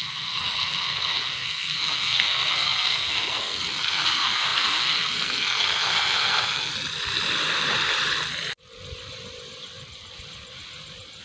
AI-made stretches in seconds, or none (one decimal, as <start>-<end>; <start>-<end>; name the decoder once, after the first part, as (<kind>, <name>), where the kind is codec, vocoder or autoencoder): 0.0-6.7 (codec, SNAC)